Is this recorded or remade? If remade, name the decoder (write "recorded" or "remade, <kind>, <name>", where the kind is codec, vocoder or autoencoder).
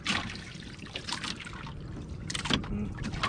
recorded